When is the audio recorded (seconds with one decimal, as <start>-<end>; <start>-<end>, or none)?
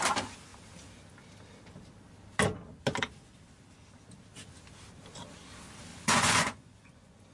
0.0-5.9